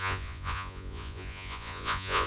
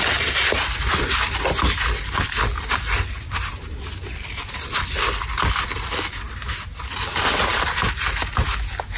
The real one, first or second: second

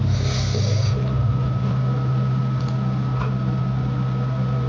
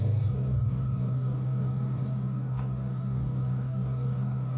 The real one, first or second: first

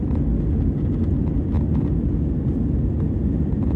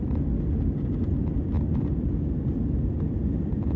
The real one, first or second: first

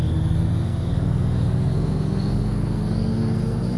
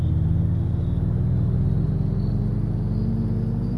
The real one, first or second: second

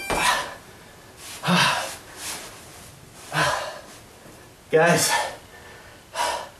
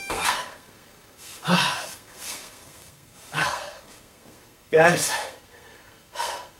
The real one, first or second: first